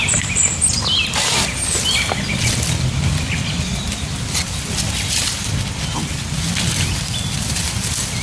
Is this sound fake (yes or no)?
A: no